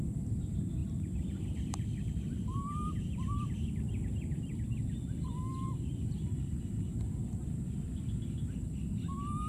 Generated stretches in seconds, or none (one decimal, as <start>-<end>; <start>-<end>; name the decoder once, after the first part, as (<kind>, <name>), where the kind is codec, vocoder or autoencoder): 0.8-4.8 (vocoder, BigVGAN v2); 5.5-6.9